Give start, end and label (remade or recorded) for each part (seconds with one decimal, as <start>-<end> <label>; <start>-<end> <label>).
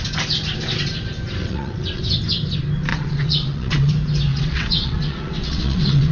0.0-1.4 recorded; 1.4-2.0 remade; 2.0-2.9 recorded; 2.9-3.9 remade; 3.9-4.3 recorded; 4.3-6.1 remade